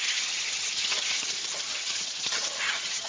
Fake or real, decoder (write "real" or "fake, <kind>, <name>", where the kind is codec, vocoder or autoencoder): fake, vocoder, HiFi-GAN